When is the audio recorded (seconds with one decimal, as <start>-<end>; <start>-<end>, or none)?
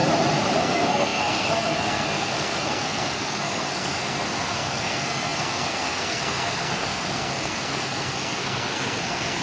0.0-0.6